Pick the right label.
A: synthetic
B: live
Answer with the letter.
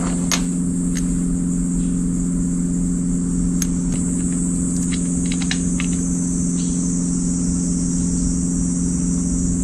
B